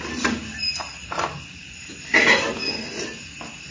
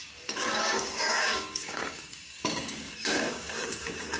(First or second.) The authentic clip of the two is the first